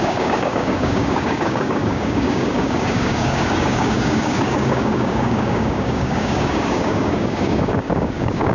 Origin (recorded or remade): remade